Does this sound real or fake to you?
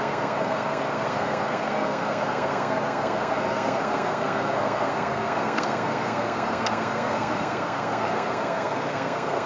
fake